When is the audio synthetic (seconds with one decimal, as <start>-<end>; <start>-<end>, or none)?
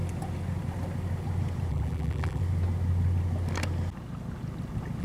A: 1.7-2.4